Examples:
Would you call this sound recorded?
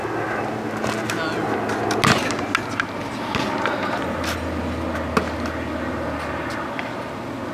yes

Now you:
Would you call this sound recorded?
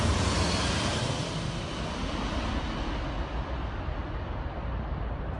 yes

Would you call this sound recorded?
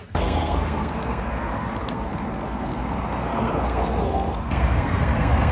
no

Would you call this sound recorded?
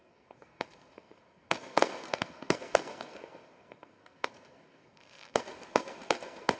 no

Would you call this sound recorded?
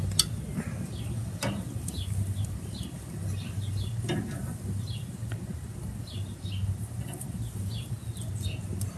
yes